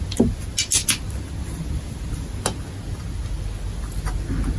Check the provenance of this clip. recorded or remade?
recorded